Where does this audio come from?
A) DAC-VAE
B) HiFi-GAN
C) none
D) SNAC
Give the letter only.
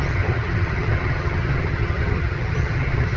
B